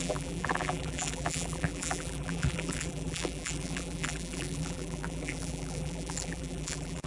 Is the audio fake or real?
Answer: fake